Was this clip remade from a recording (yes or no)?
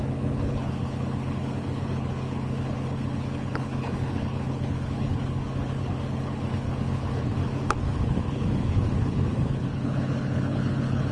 yes